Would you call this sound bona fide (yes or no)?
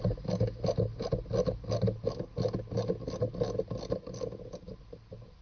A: yes